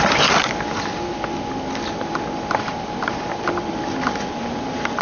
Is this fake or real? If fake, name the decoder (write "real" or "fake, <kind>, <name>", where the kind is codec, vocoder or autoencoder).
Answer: real